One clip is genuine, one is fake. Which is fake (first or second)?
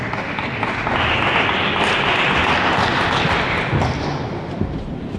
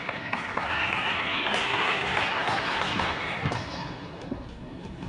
second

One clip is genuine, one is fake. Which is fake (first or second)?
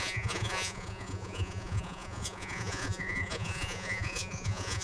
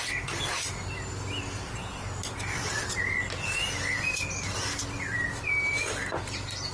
first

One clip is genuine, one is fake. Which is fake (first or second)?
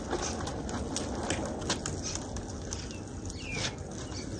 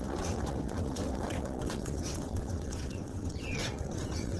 second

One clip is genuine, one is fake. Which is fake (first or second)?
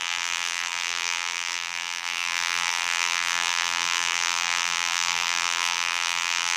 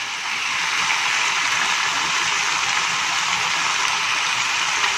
first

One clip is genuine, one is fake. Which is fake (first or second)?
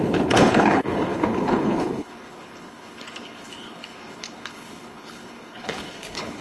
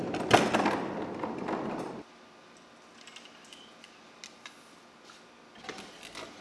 first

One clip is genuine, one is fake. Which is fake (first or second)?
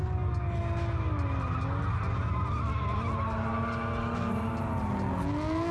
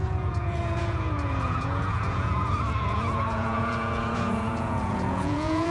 second